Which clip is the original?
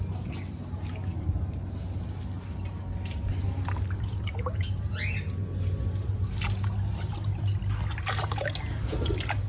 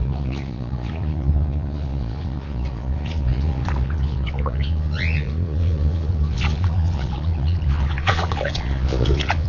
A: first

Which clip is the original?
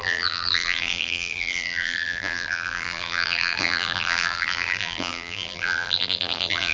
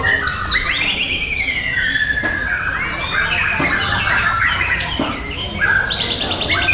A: second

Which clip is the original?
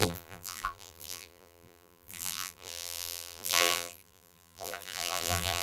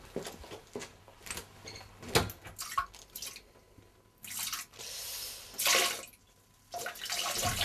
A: second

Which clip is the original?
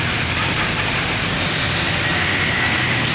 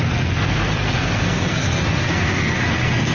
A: first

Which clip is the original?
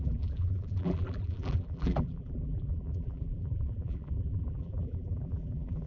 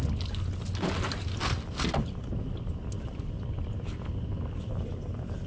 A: second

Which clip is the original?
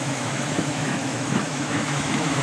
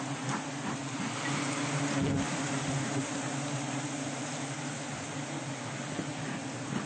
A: second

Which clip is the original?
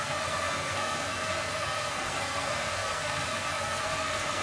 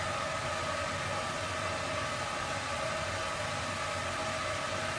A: second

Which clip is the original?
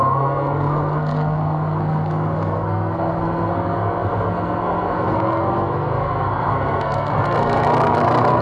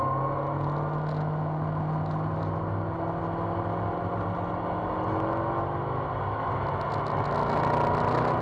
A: second